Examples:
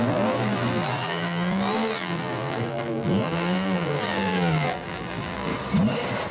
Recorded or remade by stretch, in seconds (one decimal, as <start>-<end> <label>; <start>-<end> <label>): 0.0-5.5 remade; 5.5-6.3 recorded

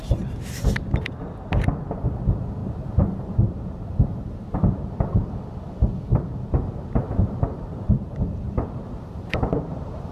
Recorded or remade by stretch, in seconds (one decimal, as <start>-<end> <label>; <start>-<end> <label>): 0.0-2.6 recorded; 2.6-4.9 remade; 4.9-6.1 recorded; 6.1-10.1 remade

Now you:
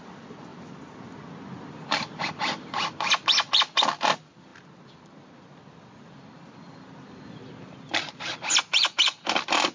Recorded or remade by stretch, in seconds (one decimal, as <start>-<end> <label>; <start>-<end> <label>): 0.0-4.5 recorded; 4.5-8.2 remade; 8.2-9.7 recorded